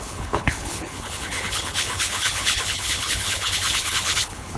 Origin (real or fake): fake